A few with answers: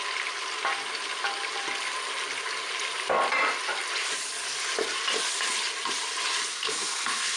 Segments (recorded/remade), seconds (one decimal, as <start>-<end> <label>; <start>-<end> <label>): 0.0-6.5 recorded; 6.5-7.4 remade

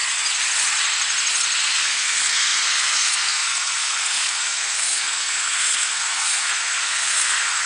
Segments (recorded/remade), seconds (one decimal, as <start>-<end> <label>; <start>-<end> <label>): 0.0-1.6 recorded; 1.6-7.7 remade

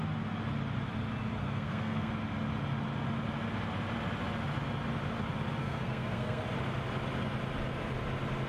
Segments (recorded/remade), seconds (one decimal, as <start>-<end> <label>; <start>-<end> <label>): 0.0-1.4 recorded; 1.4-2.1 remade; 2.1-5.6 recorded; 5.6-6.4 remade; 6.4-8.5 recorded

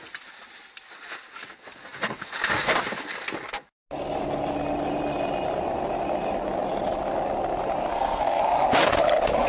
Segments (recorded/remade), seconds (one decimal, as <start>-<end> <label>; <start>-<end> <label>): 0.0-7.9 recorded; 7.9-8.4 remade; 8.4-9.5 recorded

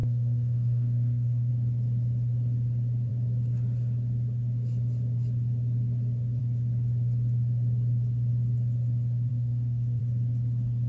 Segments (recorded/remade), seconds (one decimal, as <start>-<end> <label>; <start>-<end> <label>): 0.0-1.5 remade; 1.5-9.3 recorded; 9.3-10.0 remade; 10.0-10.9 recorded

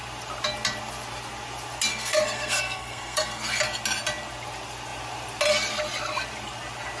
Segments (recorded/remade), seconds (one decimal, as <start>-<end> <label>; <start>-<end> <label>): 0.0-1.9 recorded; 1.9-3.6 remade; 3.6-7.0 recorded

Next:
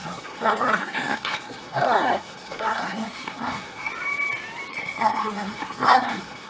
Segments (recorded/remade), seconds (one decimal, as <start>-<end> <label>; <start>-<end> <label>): 0.0-3.9 remade; 3.9-4.7 recorded; 4.7-6.5 remade